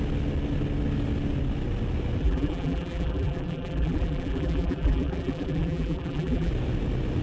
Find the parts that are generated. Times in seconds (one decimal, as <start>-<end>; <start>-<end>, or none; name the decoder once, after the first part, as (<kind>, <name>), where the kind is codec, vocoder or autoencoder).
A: 2.2-6.5 (vocoder, BigVGAN v2)

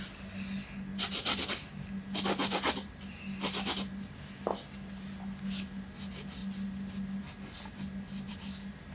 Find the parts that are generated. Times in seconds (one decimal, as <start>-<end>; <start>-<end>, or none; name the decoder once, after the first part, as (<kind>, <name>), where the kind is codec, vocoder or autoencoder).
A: none

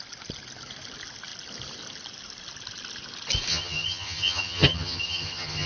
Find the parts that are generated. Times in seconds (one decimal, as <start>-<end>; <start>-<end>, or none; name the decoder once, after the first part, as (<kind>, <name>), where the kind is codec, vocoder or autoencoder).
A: 3.5-5.7 (vocoder, HiFi-GAN)